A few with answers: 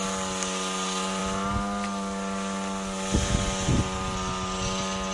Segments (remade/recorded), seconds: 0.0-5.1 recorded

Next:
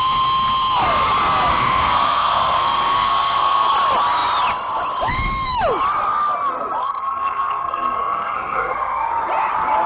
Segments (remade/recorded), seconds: 0.0-1.5 recorded; 1.5-3.7 remade; 3.7-6.8 recorded; 6.8-9.2 remade; 9.2-9.9 recorded